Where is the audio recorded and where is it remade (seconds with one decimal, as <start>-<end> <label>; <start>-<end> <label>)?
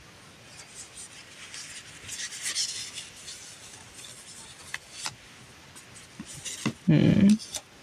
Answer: 0.0-7.8 recorded